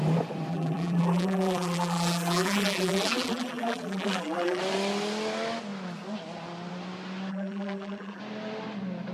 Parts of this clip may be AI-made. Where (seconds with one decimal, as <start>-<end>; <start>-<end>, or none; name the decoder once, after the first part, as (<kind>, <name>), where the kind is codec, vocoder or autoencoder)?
0.5-4.6 (vocoder, BigVGAN v2); 7.3-8.2